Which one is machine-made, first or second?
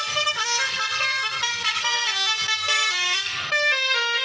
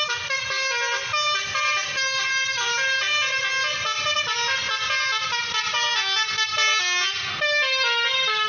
first